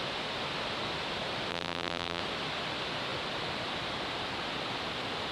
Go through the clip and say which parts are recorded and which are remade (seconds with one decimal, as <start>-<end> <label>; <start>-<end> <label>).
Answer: 0.0-1.5 recorded; 1.5-2.2 remade; 2.2-5.3 recorded